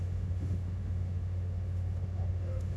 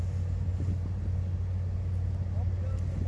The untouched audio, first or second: second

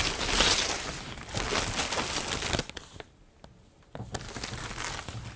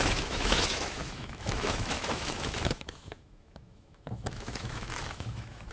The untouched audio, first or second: first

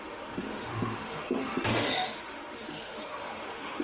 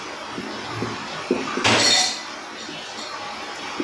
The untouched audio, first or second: second